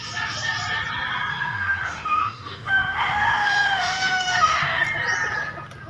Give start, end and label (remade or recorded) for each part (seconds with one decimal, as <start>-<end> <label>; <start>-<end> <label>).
0.0-1.3 recorded; 1.3-4.8 remade; 4.8-5.9 recorded